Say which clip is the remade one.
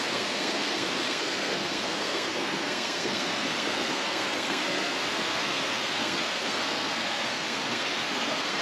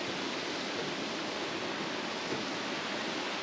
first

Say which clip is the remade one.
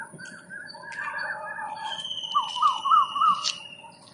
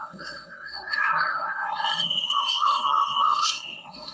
second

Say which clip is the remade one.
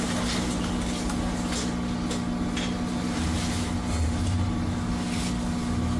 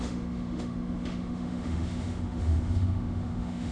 second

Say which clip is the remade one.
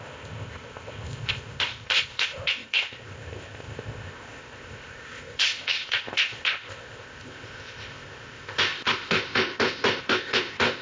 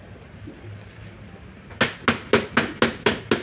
first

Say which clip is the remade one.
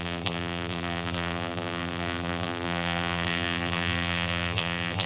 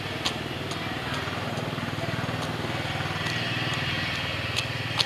first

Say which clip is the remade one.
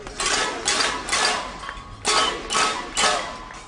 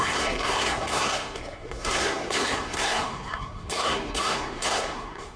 second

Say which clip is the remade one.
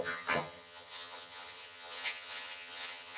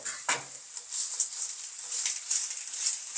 first